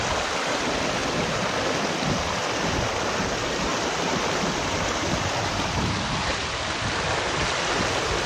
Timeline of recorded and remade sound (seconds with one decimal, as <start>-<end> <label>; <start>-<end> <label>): 0.0-8.3 recorded